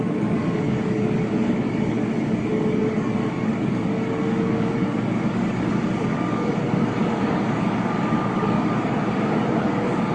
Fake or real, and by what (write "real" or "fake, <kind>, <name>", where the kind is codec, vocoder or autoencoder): fake, codec, DAC